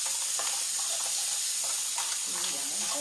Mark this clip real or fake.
real